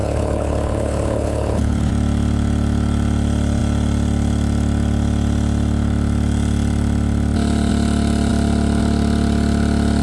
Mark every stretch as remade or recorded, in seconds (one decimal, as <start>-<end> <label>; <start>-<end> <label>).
0.0-1.9 remade; 1.9-10.0 recorded